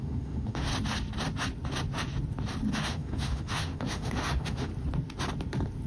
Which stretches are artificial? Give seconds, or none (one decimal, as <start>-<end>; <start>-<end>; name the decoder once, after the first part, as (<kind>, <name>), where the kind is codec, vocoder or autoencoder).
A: 0.0-0.7 (autoencoder, DAC-VAE); 2.7-4.7